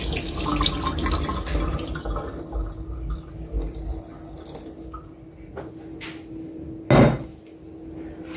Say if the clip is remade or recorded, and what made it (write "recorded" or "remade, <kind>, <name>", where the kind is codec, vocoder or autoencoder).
recorded